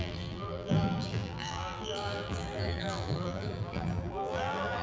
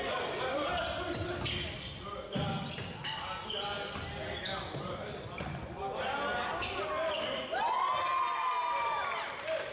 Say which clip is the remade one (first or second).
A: first